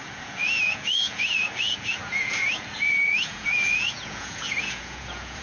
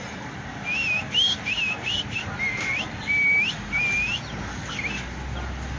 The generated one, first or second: first